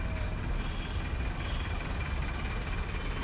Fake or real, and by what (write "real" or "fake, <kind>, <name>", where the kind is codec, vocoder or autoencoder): real